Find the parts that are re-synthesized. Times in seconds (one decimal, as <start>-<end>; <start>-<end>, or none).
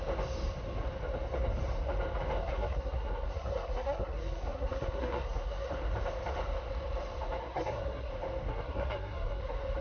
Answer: 2.4-5.7; 7.4-8.1; 8.5-9.4